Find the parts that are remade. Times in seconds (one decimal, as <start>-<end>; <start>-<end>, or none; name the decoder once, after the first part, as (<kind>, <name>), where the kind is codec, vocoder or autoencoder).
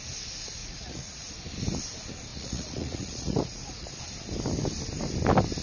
0.6-1.3 (vocoder, Vocos); 2.3-3.9